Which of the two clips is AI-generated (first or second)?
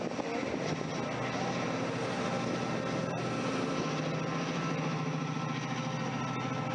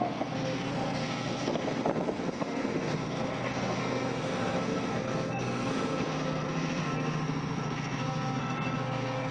second